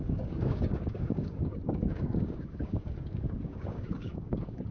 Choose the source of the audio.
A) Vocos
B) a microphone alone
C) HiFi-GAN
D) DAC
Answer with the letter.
D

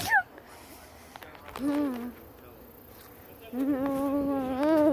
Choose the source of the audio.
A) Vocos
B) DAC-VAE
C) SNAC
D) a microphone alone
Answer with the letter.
D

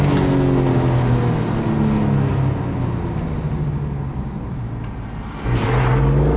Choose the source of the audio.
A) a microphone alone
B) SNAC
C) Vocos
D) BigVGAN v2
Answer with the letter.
A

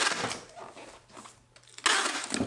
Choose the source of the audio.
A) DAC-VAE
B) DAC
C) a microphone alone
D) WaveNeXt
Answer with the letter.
C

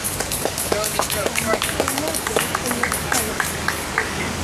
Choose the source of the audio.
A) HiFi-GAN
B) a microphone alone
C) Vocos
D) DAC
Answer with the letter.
D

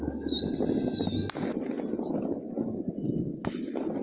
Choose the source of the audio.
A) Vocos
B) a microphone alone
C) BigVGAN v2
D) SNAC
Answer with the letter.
B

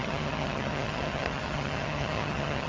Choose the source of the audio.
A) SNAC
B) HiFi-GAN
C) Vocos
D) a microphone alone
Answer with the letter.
B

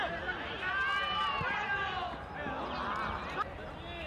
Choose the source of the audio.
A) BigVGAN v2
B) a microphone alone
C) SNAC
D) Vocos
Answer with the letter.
B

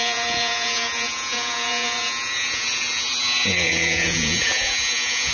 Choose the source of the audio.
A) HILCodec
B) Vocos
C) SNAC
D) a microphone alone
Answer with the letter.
B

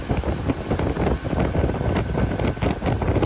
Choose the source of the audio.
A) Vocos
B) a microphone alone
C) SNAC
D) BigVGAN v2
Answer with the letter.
B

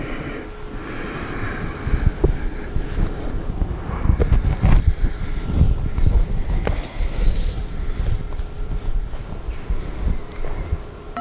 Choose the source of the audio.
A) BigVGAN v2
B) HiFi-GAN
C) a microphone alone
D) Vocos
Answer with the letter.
C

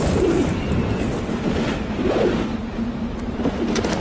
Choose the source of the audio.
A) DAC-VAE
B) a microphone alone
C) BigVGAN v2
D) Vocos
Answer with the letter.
B